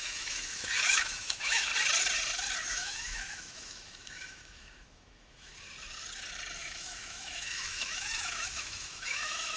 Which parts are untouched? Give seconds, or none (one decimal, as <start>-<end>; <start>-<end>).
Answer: 1.7-2.7; 5.5-6.6